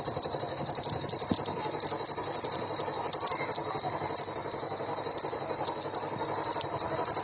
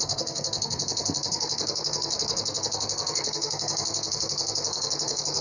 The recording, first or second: first